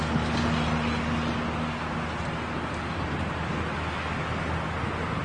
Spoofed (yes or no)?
no